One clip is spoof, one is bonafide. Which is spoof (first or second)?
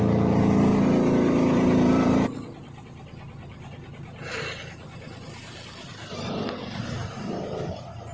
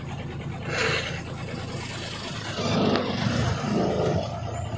first